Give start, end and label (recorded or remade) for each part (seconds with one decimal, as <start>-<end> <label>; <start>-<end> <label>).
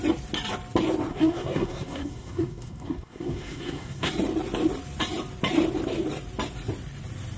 0.0-1.1 recorded; 1.1-4.1 remade; 4.1-7.4 recorded